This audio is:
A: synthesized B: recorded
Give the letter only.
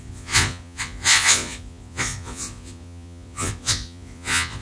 A